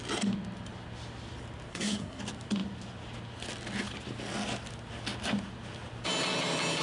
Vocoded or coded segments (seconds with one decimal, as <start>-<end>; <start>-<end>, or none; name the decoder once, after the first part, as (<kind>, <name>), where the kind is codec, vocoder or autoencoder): 1.7-2.2 (codec, SNAC)